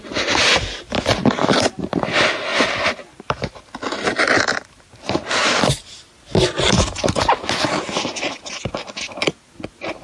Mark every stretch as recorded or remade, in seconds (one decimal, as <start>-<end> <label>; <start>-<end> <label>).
0.0-1.1 recorded; 1.1-2.0 remade; 2.0-2.5 recorded; 2.5-5.3 remade; 5.3-10.0 recorded